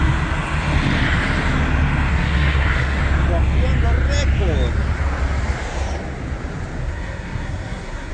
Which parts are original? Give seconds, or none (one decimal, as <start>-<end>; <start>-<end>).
0.0-2.1; 3.0-6.8